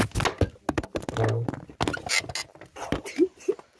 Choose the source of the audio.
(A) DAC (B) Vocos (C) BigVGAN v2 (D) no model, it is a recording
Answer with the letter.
D